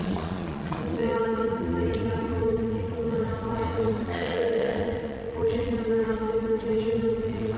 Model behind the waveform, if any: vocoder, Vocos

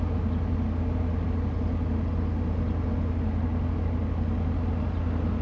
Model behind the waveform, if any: none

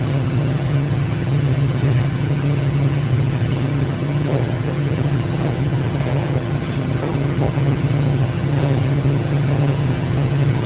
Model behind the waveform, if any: vocoder, HiFi-GAN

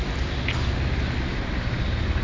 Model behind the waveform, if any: none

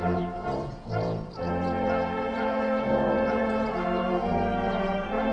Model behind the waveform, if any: vocoder, Vocos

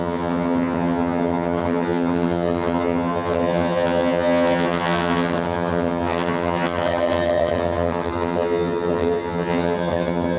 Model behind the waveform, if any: vocoder, HiFi-GAN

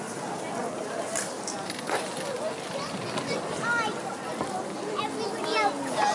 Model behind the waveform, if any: none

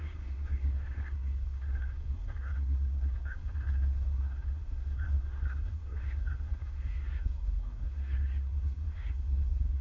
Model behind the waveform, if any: codec, SNAC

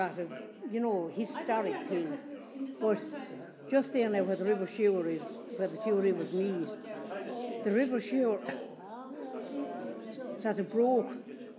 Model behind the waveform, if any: none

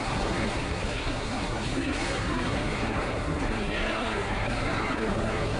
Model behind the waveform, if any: codec, SNAC